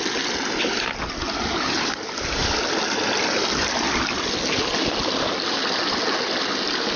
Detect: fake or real real